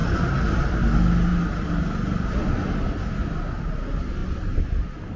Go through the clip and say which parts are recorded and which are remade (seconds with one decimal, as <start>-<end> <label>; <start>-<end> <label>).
0.0-5.2 recorded